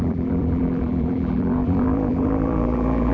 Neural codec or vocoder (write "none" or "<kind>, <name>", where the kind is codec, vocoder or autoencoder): vocoder, BigVGAN v2